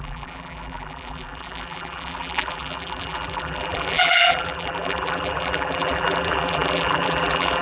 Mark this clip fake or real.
fake